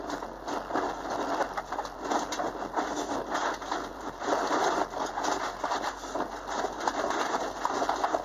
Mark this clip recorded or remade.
recorded